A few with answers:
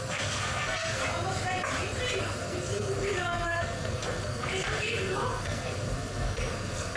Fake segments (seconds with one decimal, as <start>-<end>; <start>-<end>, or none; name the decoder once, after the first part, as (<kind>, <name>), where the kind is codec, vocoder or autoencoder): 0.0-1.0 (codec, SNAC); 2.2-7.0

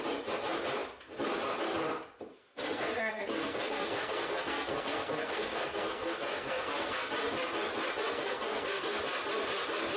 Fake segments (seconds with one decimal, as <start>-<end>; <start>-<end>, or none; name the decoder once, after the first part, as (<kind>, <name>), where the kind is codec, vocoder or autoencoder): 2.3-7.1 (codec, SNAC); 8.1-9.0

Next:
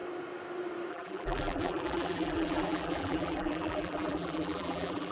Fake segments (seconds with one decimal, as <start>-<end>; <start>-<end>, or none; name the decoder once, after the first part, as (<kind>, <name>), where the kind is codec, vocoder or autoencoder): 0.9-5.1 (vocoder, BigVGAN v2)

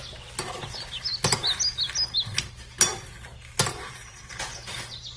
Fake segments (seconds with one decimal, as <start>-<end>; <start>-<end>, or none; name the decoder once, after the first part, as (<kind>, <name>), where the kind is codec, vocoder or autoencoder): 3.7-4.3 (vocoder, Vocos)

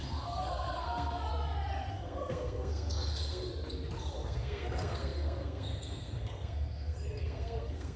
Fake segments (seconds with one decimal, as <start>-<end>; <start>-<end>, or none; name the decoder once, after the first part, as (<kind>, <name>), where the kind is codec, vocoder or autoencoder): 0.0-1.3 (codec, SNAC); 1.9-3.5; 4.0-8.0

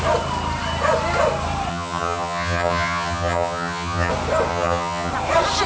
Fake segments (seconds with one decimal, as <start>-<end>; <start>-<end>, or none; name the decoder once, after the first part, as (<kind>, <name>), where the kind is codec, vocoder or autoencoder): 1.7-4.1 (vocoder, HiFi-GAN); 4.5-5.1